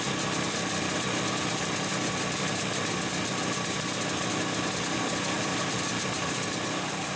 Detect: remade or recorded remade